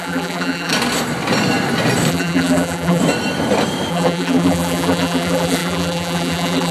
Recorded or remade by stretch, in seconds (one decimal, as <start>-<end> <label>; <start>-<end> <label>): 0.0-0.7 remade; 0.7-2.1 recorded; 2.1-3.0 remade; 3.0-3.9 recorded; 3.9-6.7 remade